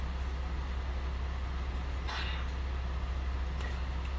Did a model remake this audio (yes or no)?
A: no